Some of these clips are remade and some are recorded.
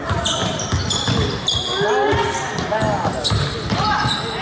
recorded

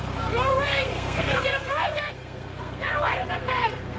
remade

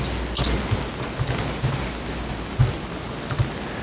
recorded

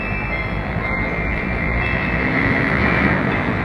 remade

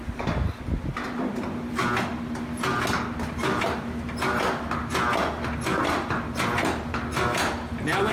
recorded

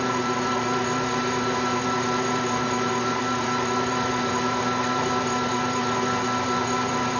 remade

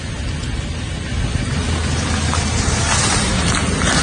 recorded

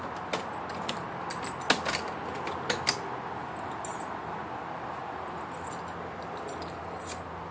recorded